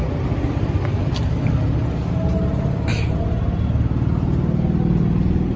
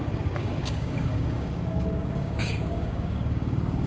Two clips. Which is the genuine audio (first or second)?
first